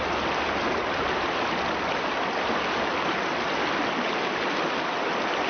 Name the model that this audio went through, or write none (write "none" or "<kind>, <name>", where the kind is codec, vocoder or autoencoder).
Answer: none